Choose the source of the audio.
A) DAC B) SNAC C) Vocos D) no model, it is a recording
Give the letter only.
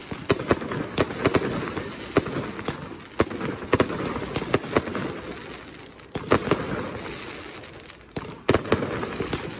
D